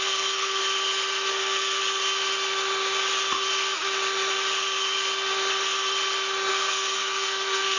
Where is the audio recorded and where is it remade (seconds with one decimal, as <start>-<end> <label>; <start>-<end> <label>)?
0.0-0.6 remade; 0.6-1.3 recorded; 1.3-1.8 remade; 1.8-6.5 recorded; 6.5-7.8 remade